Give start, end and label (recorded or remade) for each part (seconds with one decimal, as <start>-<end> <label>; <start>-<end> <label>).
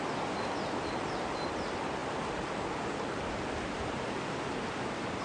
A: 0.0-5.2 recorded